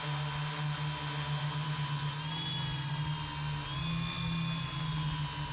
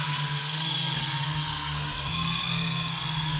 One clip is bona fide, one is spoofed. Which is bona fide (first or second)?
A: first